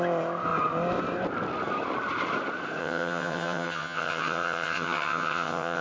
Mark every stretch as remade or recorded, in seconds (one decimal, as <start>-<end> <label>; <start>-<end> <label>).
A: 0.0-2.8 recorded; 2.8-5.8 remade